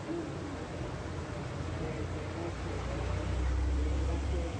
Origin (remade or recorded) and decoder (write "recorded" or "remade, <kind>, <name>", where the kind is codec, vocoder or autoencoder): recorded